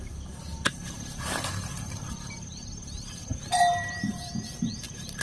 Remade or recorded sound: remade